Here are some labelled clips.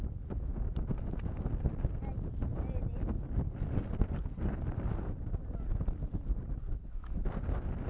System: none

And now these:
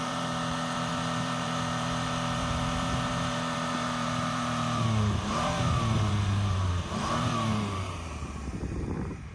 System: vocoder, BigVGAN v2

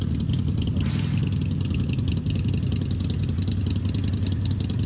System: none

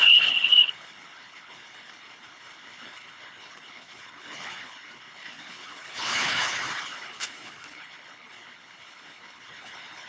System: codec, HILCodec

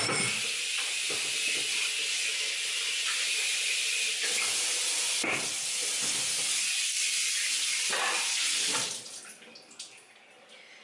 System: none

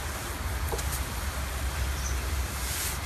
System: none